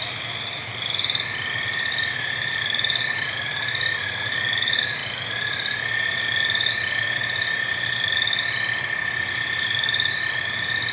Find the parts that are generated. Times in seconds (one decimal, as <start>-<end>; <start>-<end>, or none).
none